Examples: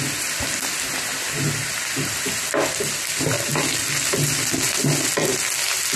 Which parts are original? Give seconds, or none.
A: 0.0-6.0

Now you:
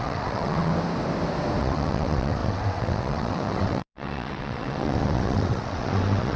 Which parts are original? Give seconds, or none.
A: 0.7-1.6